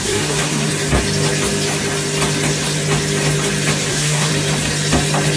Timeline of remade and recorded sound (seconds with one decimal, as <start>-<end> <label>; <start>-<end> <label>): 0.0-0.7 remade; 0.7-3.9 recorded; 3.9-4.3 remade; 4.3-5.4 recorded